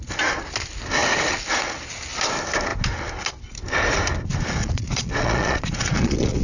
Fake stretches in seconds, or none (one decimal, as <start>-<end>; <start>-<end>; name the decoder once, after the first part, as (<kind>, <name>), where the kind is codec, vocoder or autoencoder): 4.6-6.4 (vocoder, Vocos)